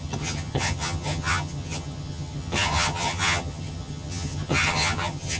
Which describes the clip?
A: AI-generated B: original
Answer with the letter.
A